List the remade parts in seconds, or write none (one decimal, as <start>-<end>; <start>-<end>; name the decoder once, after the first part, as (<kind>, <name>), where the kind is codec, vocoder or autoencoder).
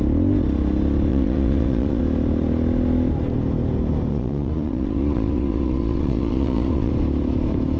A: 1.1-2.0 (vocoder, Vocos); 4.1-6.9